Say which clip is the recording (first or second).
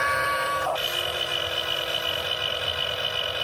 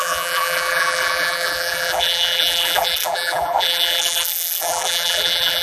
first